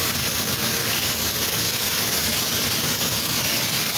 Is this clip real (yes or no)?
no